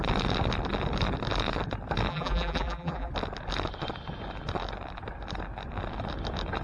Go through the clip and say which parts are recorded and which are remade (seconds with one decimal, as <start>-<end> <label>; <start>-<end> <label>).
0.0-2.1 recorded; 2.1-3.1 remade; 3.1-6.6 recorded